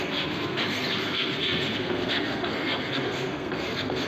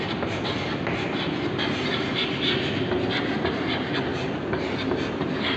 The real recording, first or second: second